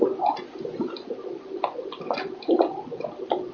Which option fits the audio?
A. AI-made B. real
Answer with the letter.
B